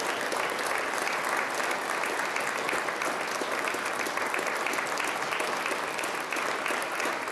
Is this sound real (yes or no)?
yes